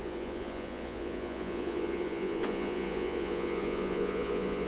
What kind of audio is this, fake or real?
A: fake